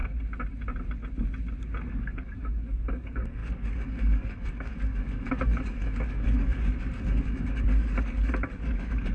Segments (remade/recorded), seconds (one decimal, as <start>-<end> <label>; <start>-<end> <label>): 0.0-1.9 recorded; 1.9-9.1 remade